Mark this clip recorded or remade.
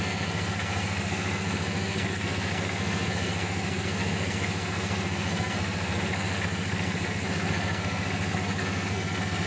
remade